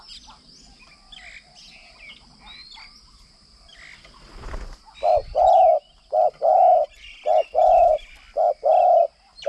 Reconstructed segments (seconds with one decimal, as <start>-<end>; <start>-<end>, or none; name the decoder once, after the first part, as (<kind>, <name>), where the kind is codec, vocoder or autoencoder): none